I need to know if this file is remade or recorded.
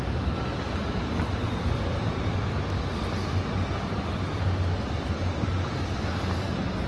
recorded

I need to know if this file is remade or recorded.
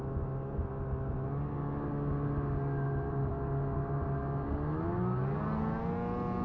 recorded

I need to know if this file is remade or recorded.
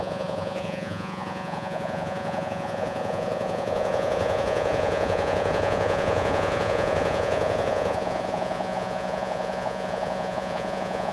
remade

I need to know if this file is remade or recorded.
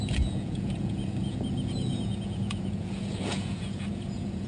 remade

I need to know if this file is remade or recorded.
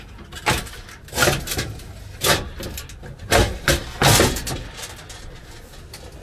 recorded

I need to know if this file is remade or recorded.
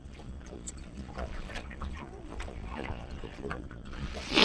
remade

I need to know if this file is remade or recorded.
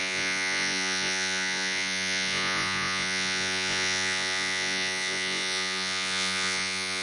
remade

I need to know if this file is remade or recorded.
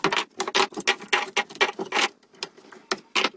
recorded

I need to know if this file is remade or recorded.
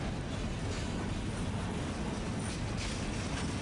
recorded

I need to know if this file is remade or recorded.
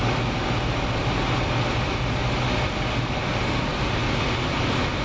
recorded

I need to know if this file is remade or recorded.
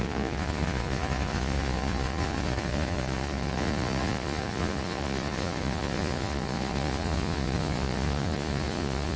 remade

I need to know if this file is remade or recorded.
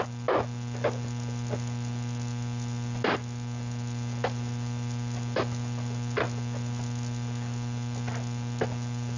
recorded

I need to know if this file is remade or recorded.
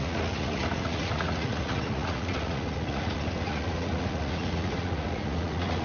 remade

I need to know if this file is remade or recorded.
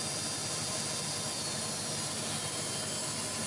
recorded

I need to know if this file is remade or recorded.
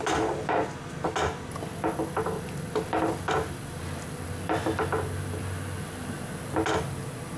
recorded